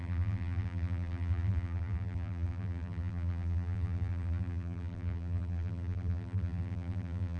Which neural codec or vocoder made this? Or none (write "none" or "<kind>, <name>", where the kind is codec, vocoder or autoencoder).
vocoder, BigVGAN v2